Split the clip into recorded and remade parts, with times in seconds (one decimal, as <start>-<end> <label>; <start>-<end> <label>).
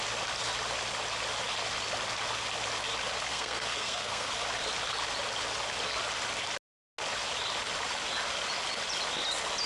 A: 0.0-3.3 recorded; 3.3-4.3 remade; 4.3-9.7 recorded